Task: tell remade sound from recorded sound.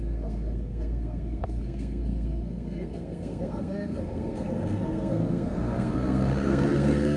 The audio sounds remade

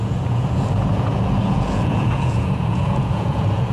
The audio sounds remade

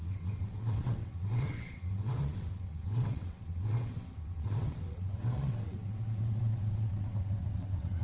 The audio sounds remade